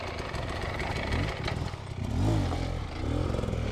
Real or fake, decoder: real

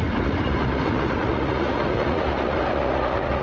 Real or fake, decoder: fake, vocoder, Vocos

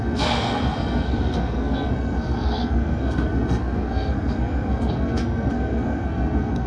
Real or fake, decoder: fake, codec, SNAC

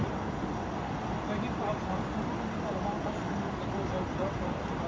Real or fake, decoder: real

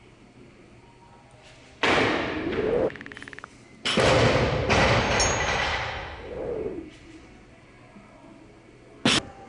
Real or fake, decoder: real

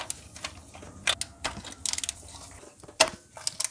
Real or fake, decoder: real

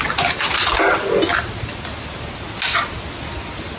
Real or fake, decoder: real